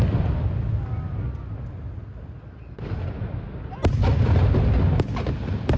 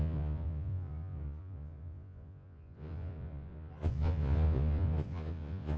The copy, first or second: second